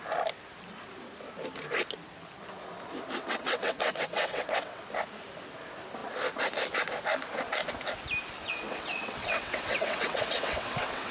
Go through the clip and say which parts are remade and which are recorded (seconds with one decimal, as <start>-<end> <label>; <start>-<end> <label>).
0.0-3.2 recorded; 3.2-4.8 remade; 4.8-8.4 recorded; 8.4-11.1 remade